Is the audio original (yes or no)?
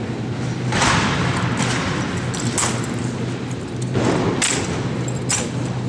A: yes